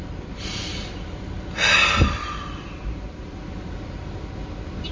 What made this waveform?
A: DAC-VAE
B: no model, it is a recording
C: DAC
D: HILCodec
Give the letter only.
B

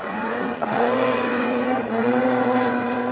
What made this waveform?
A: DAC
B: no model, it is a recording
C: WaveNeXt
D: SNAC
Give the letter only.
C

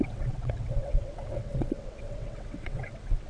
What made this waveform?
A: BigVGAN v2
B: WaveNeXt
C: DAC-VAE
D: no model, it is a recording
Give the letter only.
B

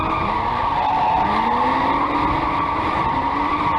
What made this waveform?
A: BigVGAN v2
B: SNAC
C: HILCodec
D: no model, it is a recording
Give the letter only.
D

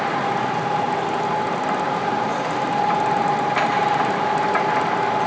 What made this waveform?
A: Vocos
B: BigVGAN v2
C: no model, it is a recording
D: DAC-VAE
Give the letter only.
C